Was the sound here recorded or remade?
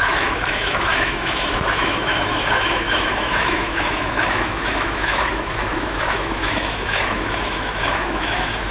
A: remade